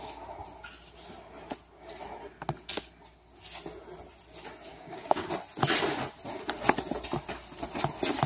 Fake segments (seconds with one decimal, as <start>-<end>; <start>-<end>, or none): 4.7-5.3